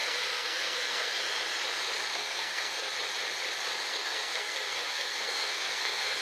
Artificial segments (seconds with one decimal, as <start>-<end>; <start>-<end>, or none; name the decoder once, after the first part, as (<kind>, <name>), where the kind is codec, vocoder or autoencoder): 0.0-1.2 (codec, SNAC); 2.1-2.9; 3.9-6.2